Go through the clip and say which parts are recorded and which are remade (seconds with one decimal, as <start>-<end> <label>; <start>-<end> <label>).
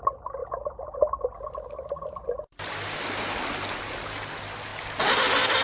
0.0-5.6 recorded